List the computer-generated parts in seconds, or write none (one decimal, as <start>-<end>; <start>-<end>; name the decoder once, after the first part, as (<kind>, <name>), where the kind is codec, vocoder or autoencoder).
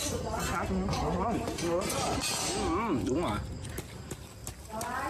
none